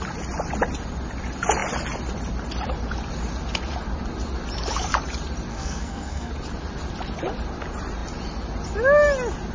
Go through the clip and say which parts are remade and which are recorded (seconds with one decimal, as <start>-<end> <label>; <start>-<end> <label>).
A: 0.0-5.5 recorded; 5.5-6.3 remade; 6.3-9.5 recorded